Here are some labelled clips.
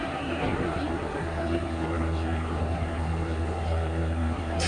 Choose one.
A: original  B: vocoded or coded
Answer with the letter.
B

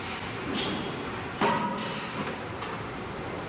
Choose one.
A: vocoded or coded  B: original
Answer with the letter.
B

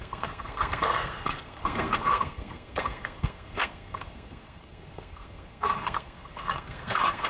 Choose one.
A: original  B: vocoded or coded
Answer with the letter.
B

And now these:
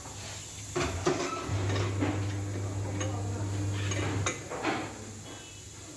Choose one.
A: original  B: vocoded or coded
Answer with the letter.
A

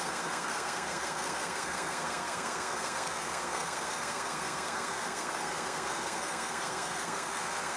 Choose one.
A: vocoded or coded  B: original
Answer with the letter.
A